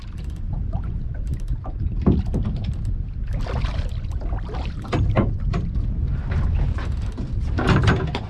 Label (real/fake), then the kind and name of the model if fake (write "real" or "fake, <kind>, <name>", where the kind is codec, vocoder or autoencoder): real